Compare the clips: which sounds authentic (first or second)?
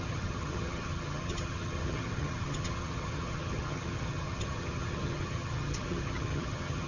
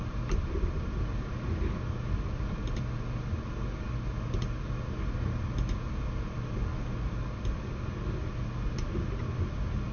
second